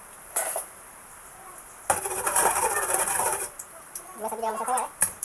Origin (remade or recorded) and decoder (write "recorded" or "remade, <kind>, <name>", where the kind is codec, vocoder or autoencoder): remade, vocoder, BigVGAN v2